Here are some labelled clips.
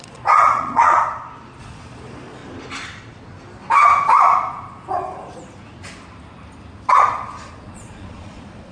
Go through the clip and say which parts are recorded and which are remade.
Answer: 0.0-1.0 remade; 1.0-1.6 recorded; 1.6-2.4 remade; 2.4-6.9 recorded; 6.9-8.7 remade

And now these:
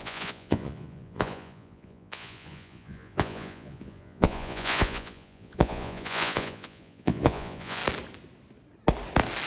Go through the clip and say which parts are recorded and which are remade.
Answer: 0.0-7.8 remade; 7.8-9.5 recorded

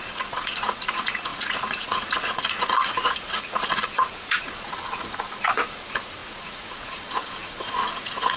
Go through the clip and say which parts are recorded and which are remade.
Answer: 0.0-8.4 remade

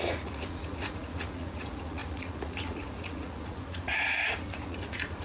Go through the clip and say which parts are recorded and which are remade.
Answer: 0.0-3.9 remade; 3.9-4.5 recorded; 4.5-5.2 remade

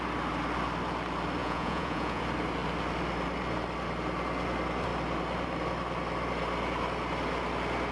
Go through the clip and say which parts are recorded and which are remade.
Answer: 0.0-1.4 recorded; 1.4-2.2 remade; 2.2-7.9 recorded

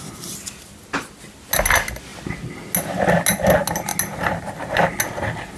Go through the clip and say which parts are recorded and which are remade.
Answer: 0.0-5.6 recorded

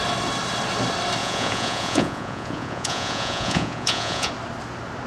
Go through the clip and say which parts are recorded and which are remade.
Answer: 0.0-1.2 recorded; 1.2-4.3 remade; 4.3-5.1 recorded

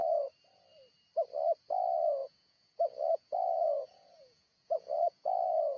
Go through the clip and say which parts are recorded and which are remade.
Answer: 0.0-2.2 recorded; 2.2-5.8 remade